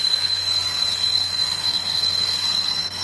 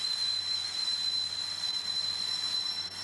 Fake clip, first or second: first